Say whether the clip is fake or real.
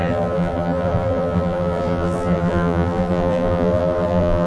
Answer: fake